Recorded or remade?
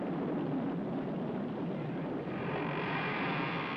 recorded